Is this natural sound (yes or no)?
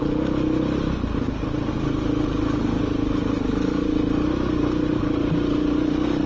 yes